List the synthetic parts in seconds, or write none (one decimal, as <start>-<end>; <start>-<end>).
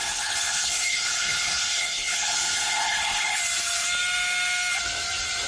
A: 0.0-3.4